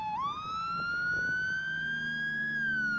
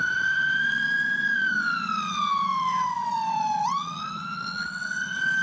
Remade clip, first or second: second